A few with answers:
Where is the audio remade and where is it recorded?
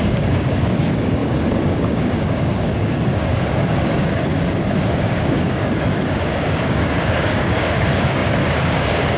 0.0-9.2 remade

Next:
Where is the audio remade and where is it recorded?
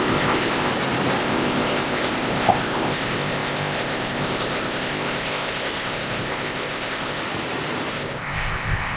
0.0-0.7 remade; 0.7-1.2 recorded; 1.2-7.2 remade; 7.2-7.9 recorded; 7.9-9.0 remade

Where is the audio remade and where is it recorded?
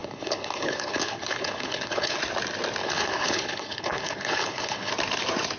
0.0-2.2 remade; 2.2-2.8 recorded; 2.8-4.9 remade; 4.9-5.6 recorded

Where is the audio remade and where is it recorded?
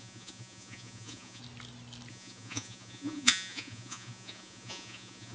0.0-1.4 remade; 1.4-2.1 recorded; 2.1-5.3 remade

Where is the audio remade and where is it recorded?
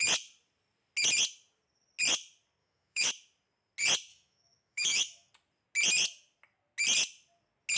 0.0-2.6 recorded; 2.6-3.1 remade; 3.1-4.1 recorded; 4.1-5.3 remade; 5.3-7.8 recorded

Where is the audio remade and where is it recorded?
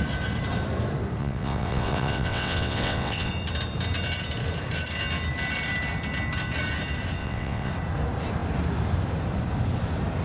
0.0-1.2 recorded; 1.2-3.3 remade; 3.3-7.2 recorded; 7.2-7.7 remade; 7.7-10.2 recorded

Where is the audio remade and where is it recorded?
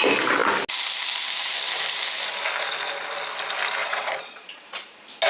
0.0-3.8 recorded; 3.8-4.6 remade; 4.6-5.3 recorded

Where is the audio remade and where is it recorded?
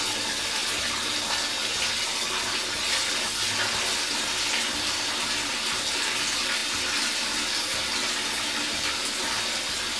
0.0-10.0 recorded